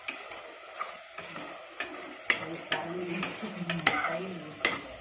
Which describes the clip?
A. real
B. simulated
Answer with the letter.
A